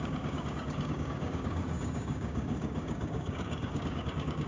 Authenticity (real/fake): fake